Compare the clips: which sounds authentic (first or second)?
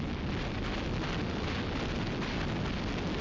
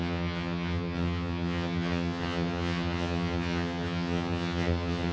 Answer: first